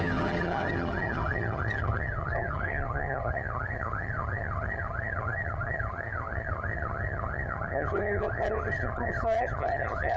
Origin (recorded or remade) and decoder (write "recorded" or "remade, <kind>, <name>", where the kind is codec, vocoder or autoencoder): remade, vocoder, HiFi-GAN